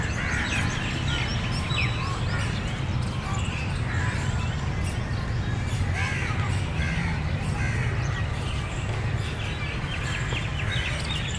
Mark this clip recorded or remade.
recorded